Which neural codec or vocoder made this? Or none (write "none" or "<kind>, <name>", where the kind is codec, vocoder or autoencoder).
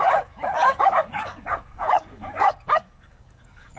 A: codec, DAC